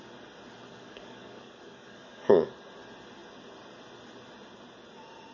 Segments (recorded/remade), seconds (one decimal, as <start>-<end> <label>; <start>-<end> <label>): 0.0-0.7 recorded; 0.7-2.5 remade; 2.5-5.3 recorded